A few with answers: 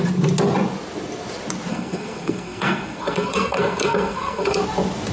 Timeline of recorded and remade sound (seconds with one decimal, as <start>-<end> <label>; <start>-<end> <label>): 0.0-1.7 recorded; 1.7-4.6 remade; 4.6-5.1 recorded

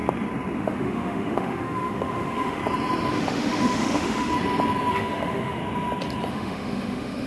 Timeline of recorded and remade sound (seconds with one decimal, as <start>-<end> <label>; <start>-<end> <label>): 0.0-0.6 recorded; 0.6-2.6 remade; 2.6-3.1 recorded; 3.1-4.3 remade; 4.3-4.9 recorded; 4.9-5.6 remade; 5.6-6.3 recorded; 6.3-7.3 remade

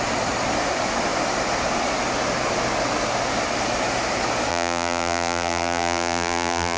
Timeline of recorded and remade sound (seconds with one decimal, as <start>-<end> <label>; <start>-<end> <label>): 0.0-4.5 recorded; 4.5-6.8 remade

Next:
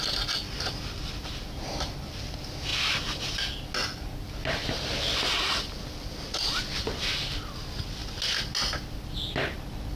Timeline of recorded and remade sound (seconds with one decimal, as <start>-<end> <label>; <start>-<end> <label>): 0.0-10.0 recorded

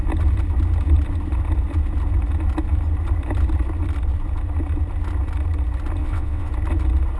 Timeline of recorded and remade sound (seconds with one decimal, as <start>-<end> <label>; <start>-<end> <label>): 0.0-6.0 recorded; 6.0-6.5 remade; 6.5-7.2 recorded